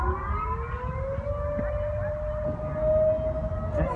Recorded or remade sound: recorded